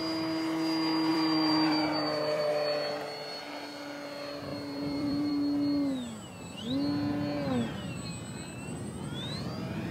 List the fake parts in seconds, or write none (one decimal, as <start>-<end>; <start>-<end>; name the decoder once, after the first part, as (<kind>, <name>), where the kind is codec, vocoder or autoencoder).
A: 1.1-2.5 (vocoder, BigVGAN v2); 4.5-5.3